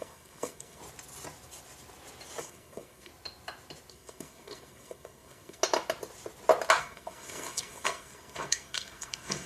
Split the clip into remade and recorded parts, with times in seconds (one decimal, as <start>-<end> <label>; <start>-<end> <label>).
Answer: 0.0-0.8 remade; 0.8-2.4 recorded; 2.4-3.1 remade; 3.1-3.9 recorded; 3.9-5.6 remade; 5.6-6.8 recorded; 6.8-9.5 remade